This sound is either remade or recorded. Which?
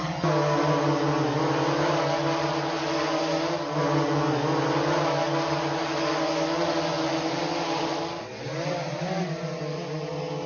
recorded